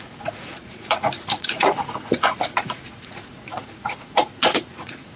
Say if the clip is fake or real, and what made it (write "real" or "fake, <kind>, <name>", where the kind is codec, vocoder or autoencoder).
fake, vocoder, Vocos